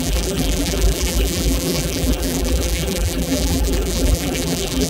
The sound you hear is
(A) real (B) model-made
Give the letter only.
B